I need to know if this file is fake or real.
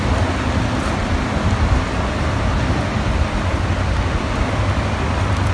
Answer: real